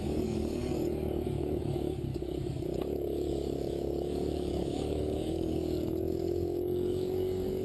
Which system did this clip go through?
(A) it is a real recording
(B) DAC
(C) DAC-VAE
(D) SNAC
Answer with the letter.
B